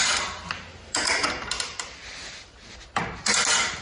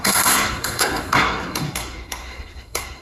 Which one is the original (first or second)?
first